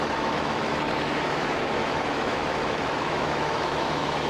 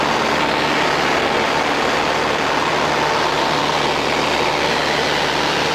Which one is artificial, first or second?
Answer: first